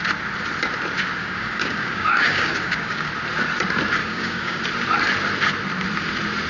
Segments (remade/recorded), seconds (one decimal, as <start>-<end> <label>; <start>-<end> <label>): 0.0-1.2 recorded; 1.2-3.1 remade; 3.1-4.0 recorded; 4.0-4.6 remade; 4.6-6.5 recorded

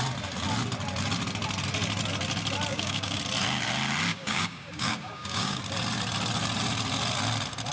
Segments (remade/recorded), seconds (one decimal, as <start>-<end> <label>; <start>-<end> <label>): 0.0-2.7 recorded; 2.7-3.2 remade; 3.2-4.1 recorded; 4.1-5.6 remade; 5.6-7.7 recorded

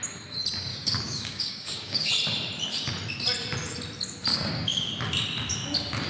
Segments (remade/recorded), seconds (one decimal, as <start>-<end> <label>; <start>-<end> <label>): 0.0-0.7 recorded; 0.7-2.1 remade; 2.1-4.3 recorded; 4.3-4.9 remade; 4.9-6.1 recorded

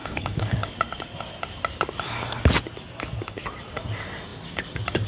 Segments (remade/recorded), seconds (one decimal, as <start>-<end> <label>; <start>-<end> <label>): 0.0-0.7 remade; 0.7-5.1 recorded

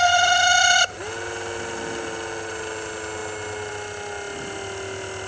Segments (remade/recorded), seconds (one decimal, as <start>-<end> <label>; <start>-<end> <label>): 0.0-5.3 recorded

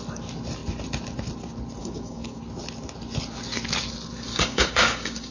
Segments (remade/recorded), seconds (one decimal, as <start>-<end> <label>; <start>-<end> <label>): 0.0-1.8 recorded; 1.8-2.4 remade; 2.4-4.3 recorded; 4.3-5.3 remade